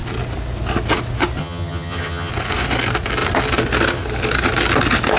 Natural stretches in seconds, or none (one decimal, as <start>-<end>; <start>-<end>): 0.0-1.4; 2.3-5.2